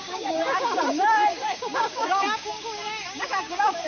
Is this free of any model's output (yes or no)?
no